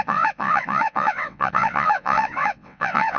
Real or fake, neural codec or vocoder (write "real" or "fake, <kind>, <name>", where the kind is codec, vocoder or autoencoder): fake, vocoder, WaveNeXt